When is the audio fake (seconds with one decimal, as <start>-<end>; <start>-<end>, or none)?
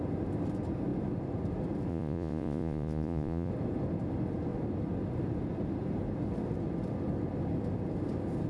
1.9-3.5